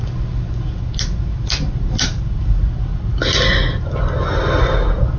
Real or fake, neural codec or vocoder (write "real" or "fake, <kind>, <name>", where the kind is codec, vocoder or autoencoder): real